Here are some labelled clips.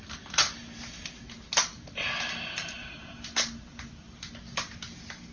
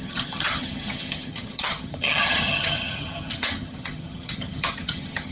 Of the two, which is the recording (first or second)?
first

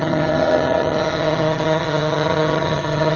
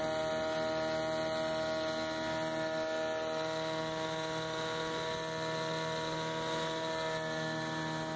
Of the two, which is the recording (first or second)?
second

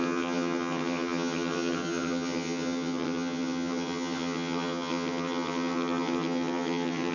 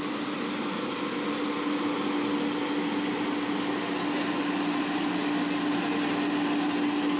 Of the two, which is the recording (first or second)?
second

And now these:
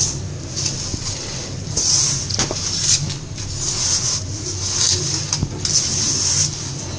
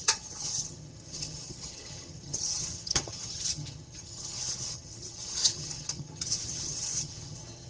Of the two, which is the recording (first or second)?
first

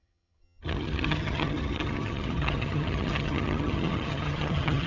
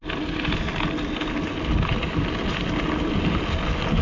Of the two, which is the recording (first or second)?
second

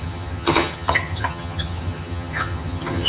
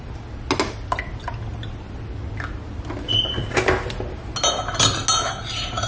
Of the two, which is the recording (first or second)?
second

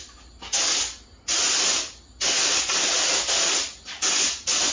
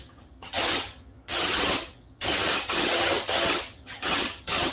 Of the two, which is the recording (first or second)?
first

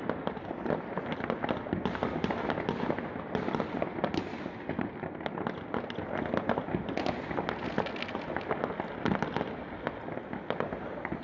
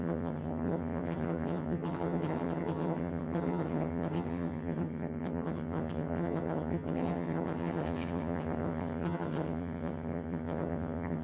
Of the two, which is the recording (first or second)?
first